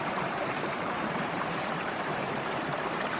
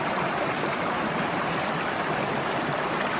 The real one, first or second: second